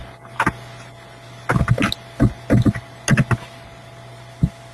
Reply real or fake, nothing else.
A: real